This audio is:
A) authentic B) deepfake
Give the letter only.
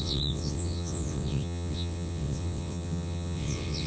B